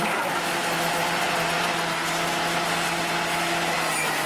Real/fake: real